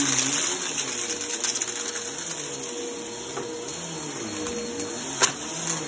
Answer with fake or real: real